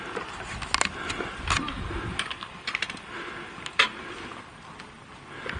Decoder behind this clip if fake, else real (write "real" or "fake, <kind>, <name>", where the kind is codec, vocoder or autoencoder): real